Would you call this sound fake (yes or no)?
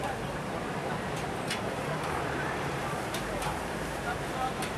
yes